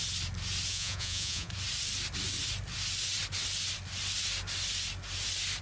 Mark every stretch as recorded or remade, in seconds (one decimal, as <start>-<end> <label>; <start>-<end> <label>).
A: 0.0-0.7 recorded; 0.7-1.5 remade; 1.5-5.6 recorded

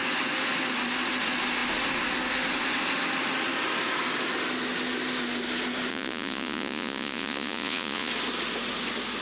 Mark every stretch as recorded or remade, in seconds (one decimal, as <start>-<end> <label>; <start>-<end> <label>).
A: 0.0-5.9 recorded; 5.9-8.1 remade; 8.1-9.2 recorded

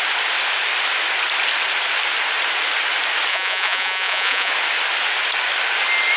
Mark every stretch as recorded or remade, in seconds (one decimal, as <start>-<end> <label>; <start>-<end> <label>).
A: 0.0-3.3 recorded; 3.3-4.5 remade; 4.5-6.2 recorded

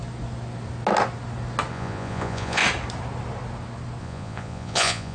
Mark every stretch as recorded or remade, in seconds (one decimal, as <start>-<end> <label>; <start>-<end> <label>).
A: 0.0-1.7 recorded; 1.7-2.6 remade; 2.6-4.0 recorded; 4.0-5.1 remade

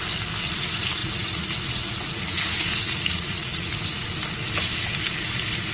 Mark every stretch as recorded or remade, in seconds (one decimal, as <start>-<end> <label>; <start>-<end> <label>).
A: 0.0-1.0 recorded; 1.0-3.7 remade; 3.7-5.7 recorded